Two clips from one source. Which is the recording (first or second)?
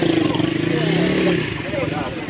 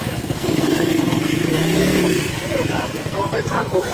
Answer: first